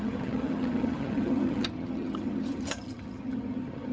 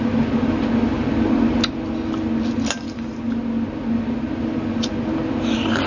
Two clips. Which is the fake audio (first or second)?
first